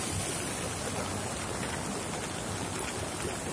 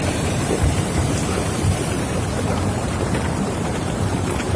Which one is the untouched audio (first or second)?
first